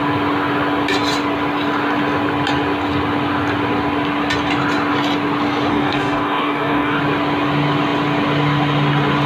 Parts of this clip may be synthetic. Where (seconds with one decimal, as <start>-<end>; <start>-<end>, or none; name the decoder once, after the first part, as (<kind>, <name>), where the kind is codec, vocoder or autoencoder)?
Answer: 5.7-7.0 (codec, DAC)